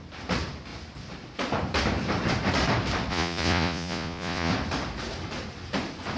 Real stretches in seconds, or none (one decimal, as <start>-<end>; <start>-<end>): 0.0-3.1; 4.5-6.2